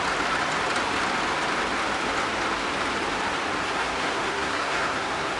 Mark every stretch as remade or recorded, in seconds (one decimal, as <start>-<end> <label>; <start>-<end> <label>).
0.0-3.6 recorded; 3.6-5.4 remade